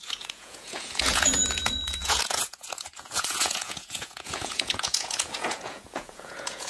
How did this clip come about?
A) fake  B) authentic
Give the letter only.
A